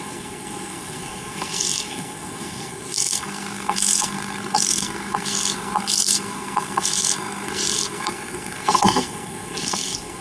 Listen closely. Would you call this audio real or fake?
fake